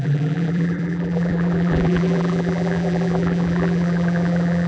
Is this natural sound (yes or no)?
no